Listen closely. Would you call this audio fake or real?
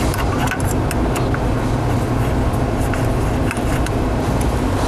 real